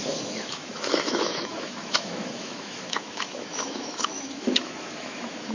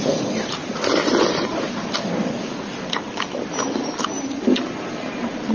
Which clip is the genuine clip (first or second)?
second